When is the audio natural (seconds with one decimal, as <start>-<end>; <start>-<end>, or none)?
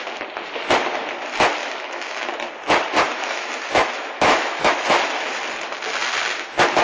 0.0-1.6; 2.3-3.2; 5.4-6.8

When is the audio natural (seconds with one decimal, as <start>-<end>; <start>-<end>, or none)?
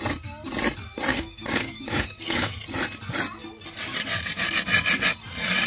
0.0-1.1; 2.5-5.7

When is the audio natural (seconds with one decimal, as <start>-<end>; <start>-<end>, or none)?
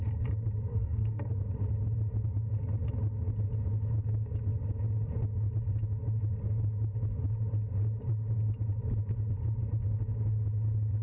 0.0-0.7; 1.3-11.0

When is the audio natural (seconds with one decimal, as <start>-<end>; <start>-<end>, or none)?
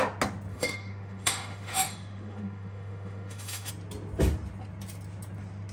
0.0-0.5; 3.7-5.7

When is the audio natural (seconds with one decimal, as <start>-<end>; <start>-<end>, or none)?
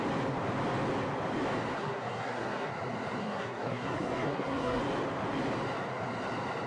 0.0-1.7; 2.7-3.2; 4.8-6.7